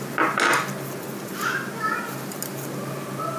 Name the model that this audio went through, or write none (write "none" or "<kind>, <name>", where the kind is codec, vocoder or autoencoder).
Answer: none